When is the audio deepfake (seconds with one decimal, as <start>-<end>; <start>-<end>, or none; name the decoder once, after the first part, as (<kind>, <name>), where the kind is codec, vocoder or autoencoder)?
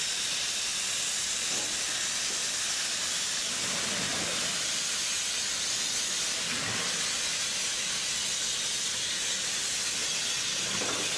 none